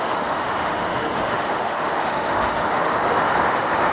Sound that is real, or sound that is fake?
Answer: fake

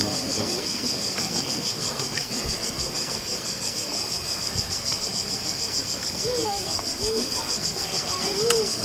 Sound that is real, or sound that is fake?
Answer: fake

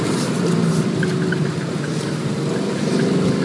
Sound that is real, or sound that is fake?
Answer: real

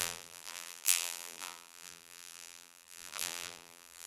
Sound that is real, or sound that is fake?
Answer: fake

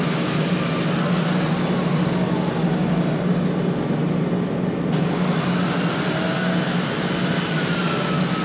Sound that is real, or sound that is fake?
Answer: real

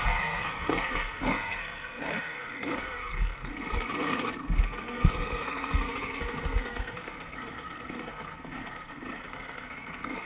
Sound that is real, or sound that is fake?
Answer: fake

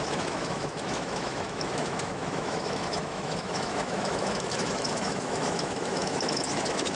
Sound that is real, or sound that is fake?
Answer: fake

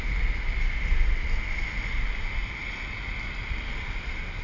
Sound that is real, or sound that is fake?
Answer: real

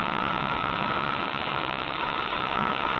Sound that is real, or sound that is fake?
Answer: fake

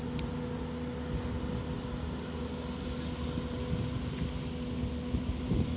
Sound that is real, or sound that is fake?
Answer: real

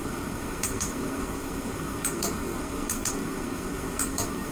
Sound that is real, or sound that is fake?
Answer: fake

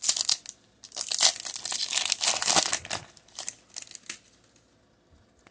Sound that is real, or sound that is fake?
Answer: real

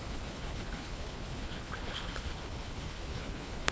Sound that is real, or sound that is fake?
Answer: fake